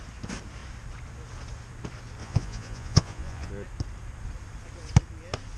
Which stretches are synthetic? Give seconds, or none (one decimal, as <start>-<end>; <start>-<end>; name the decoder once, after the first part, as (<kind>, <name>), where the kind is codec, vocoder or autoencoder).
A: 2.2-3.5 (vocoder, Vocos)